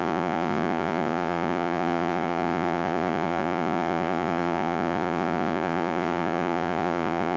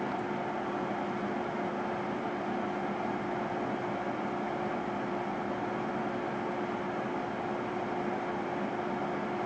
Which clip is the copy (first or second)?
first